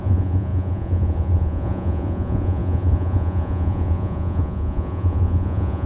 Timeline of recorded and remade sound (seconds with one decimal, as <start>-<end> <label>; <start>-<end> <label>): 0.0-5.9 remade